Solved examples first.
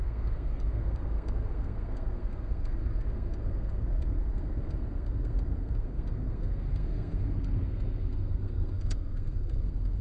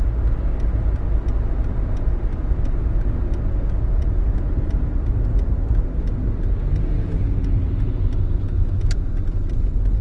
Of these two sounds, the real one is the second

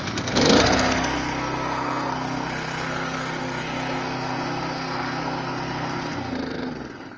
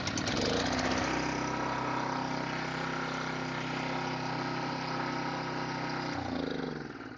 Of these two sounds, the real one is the second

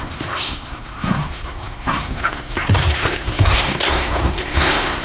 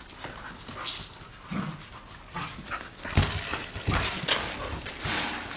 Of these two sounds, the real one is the second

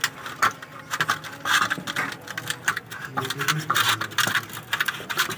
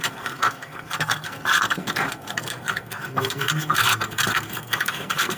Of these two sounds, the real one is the first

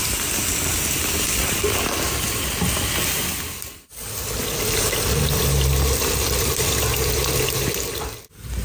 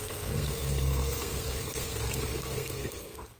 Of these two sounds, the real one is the first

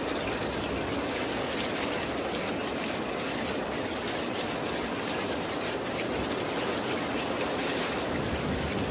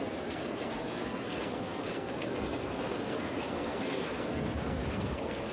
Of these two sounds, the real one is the first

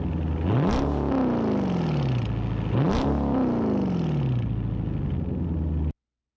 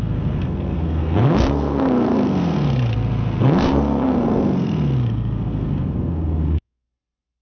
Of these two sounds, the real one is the first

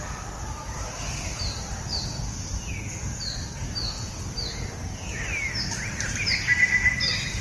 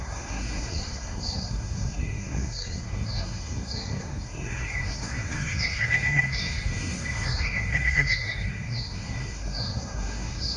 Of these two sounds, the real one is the first